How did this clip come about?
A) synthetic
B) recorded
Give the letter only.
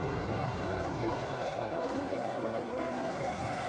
A